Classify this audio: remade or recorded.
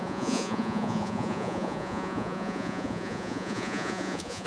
remade